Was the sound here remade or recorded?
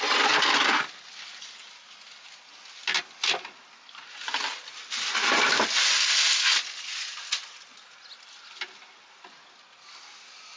recorded